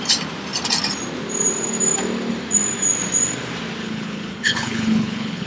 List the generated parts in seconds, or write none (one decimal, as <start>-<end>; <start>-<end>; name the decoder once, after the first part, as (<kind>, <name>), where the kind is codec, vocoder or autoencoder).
3.8-5.5 (codec, HILCodec)